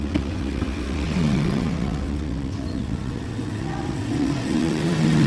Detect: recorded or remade remade